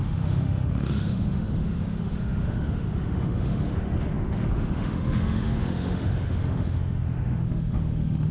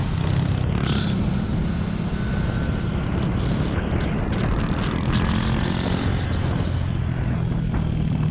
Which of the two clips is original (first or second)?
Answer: second